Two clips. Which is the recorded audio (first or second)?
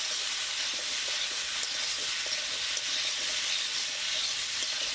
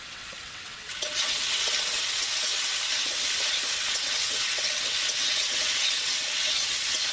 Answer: first